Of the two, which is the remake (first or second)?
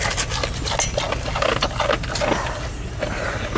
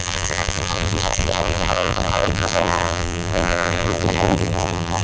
second